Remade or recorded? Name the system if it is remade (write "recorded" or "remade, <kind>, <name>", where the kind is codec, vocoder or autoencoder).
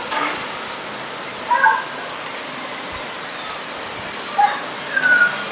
recorded